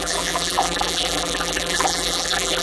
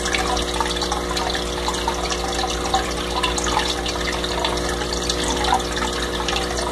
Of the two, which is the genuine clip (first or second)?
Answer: second